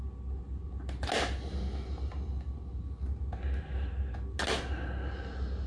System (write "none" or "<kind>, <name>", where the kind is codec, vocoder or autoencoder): none